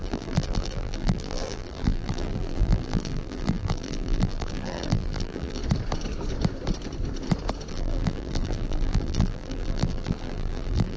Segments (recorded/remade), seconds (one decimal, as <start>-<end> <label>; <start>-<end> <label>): 0.0-5.6 remade; 5.6-7.7 recorded; 7.7-11.0 remade